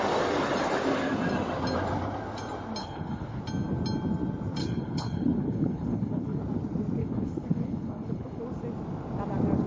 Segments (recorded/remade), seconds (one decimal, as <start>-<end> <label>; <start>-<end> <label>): 0.0-2.8 recorded; 2.8-3.4 remade; 3.4-4.6 recorded; 4.6-6.4 remade; 6.4-7.0 recorded; 7.0-8.4 remade; 8.4-9.7 recorded